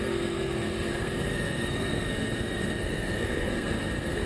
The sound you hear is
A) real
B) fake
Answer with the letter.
B